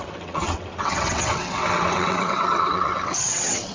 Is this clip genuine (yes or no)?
no